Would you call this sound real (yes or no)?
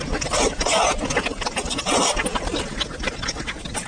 yes